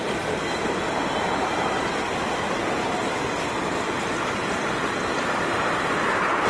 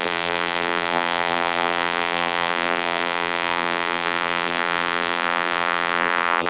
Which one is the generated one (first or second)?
second